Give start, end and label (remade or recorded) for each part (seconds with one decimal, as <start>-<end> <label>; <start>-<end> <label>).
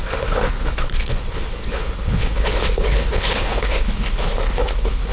0.0-5.1 remade